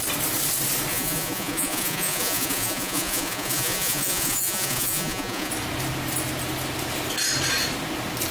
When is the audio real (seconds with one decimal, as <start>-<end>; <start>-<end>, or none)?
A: 0.0-0.9; 5.5-8.3